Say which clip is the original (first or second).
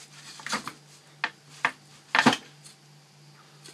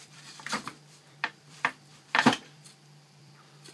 first